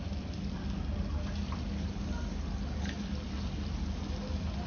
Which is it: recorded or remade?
recorded